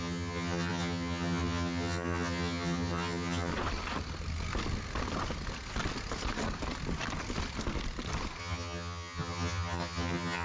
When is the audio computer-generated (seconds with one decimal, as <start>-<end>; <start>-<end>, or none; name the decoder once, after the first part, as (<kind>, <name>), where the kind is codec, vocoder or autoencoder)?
0.0-3.5 (vocoder, HiFi-GAN); 8.4-10.4